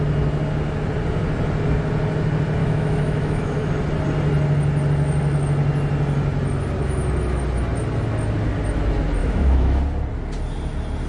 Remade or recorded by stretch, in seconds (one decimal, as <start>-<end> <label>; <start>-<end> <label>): 0.0-2.6 recorded; 2.6-3.7 remade; 3.7-9.2 recorded; 9.2-9.8 remade; 9.8-11.1 recorded